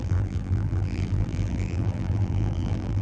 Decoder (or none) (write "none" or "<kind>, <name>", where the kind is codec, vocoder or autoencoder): vocoder, BigVGAN v2